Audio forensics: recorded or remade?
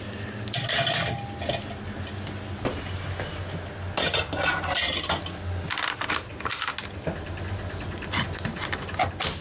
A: recorded